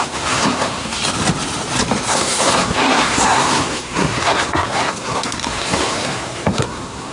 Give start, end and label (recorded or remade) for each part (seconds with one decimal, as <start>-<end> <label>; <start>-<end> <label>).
0.0-1.0 remade; 1.0-2.1 recorded; 2.1-7.1 remade